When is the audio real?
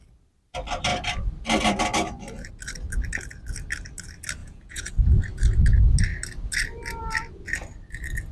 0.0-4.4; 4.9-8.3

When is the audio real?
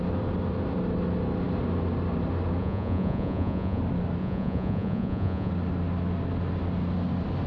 0.0-2.6; 3.8-4.2; 5.5-7.5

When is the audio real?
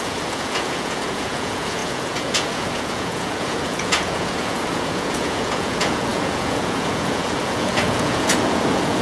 none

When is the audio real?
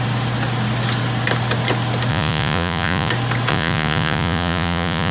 0.0-2.1; 3.1-3.5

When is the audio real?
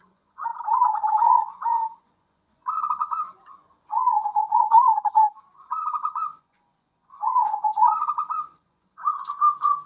0.5-1.1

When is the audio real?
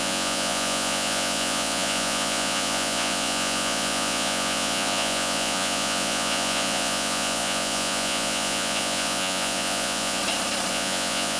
10.2-10.7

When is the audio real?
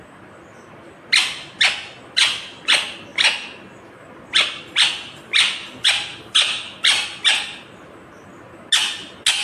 0.0-9.4